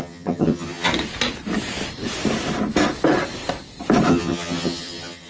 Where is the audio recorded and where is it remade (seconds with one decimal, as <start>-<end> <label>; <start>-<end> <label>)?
0.0-0.9 remade; 0.9-4.1 recorded; 4.1-5.3 remade